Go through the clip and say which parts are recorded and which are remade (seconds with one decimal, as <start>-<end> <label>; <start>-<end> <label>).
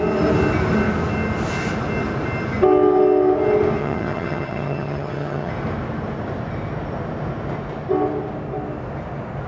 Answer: 0.0-3.8 recorded; 3.8-5.5 remade; 5.5-9.5 recorded